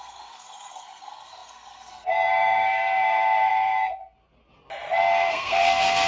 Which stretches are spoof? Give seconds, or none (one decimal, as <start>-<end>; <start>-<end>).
0.0-4.0; 5.0-6.1